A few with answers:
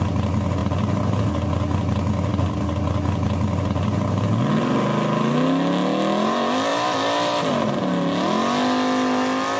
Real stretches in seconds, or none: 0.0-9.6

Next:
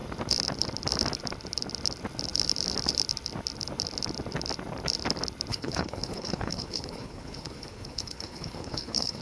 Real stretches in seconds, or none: 0.0-5.5